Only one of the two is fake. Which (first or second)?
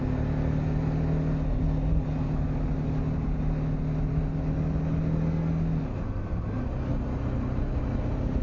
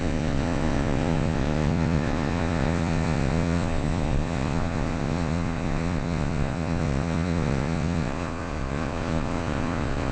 second